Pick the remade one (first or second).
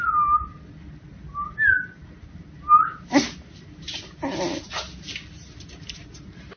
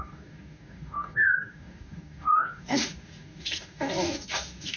second